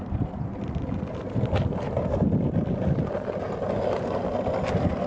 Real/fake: real